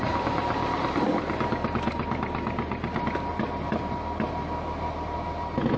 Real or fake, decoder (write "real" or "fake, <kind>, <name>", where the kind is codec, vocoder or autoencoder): real